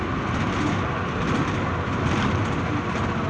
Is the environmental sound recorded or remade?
recorded